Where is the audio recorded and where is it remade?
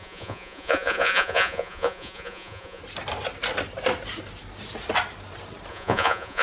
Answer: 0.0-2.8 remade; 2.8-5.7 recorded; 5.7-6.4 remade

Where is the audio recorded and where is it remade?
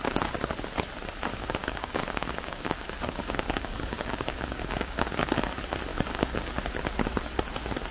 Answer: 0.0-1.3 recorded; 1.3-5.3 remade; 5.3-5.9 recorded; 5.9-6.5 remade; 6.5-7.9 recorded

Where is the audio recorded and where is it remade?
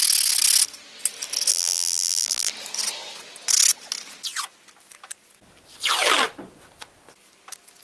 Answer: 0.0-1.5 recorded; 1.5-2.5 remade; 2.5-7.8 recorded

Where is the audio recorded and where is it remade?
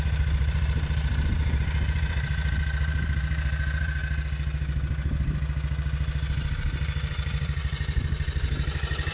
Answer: 0.0-4.0 remade; 4.0-6.5 recorded; 6.5-9.1 remade